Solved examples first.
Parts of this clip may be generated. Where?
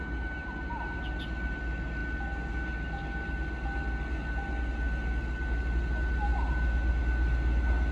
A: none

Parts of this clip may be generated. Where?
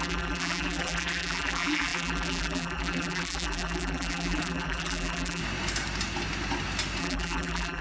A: 0.0-5.4; 7.0-7.8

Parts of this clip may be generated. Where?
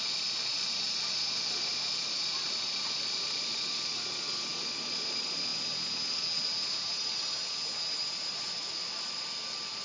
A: 0.0-5.5; 7.9-9.8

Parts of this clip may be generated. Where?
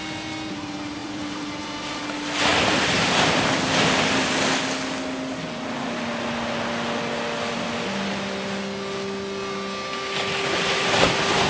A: 1.0-2.0; 2.5-4.6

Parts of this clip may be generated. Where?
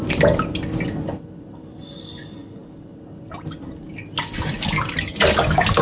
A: none